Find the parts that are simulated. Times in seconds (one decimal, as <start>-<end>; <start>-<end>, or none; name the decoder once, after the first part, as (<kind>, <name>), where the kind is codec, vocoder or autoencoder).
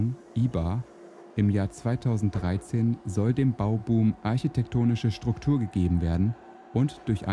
none